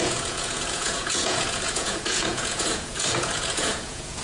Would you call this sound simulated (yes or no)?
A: yes